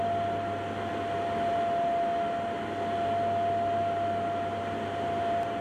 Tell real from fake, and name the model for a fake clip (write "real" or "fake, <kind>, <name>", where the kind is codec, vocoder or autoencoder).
real